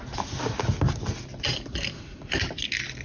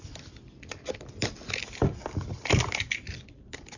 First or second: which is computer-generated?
second